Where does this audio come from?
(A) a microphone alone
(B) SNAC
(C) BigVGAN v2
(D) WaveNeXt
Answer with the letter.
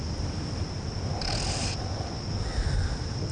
C